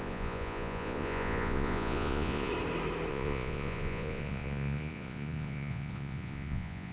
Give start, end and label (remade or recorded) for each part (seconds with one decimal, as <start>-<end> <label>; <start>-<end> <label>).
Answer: 0.0-2.5 remade; 2.5-3.1 recorded; 3.1-6.9 remade

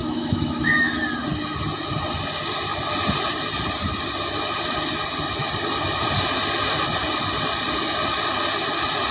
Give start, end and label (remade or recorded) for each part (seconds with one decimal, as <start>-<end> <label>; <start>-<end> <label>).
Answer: 0.0-1.0 remade; 1.0-9.1 recorded

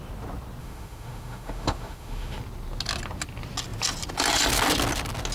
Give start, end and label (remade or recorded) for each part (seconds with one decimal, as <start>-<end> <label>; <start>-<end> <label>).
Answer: 0.0-0.6 recorded; 0.6-2.4 remade; 2.4-5.3 recorded

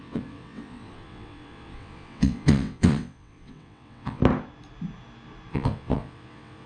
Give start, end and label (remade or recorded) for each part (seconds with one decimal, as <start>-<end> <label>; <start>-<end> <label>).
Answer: 0.0-4.2 remade; 4.2-5.5 recorded; 5.5-6.7 remade

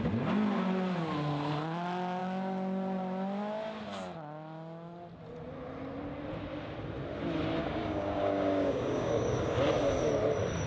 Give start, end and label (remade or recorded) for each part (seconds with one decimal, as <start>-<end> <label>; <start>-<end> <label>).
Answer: 0.0-7.6 recorded; 7.6-9.6 remade; 9.6-10.7 recorded

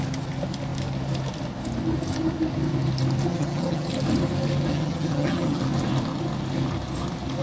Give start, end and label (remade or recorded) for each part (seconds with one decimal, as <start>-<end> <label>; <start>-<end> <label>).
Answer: 0.0-3.3 recorded; 3.3-3.9 remade; 3.9-4.7 recorded; 4.7-5.6 remade; 5.6-7.4 recorded

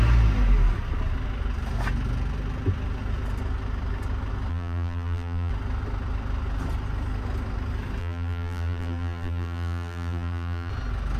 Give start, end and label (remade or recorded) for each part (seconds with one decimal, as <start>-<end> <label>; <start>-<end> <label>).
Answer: 0.0-4.5 recorded; 4.5-5.5 remade; 5.5-8.0 recorded; 8.0-10.7 remade; 10.7-11.2 recorded

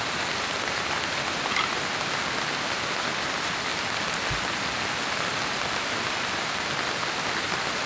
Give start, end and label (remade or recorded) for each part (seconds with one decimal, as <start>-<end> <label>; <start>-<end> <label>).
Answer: 0.0-7.9 recorded